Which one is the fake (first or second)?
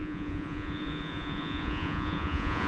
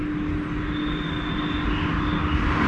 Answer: first